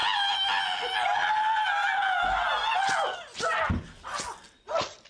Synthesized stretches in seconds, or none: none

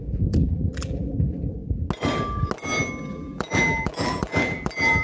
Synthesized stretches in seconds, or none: 0.0-1.6 (vocoder, BigVGAN v2); 3.1-5.0

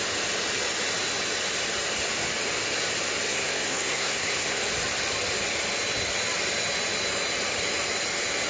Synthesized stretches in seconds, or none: 3.3-4.6 (codec, SNAC)

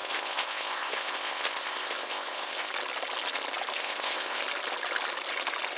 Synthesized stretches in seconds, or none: 0.0-2.7 (codec, ZipCodec); 3.8-4.4

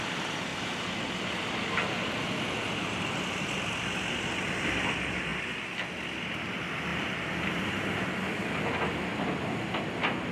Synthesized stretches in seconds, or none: 6.9-7.8 (vocoder, BigVGAN v2)

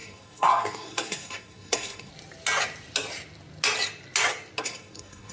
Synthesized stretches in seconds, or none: 0.0-2.1 (codec, SNAC); 4.6-5.3

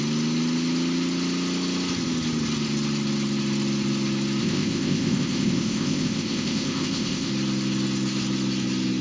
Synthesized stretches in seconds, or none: 4.4-7.3 (codec, ZipCodec)

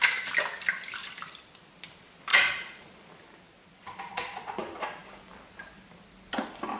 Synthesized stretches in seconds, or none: 2.3-3.1 (vocoder, Vocos); 4.1-4.6